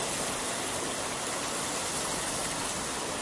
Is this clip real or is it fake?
real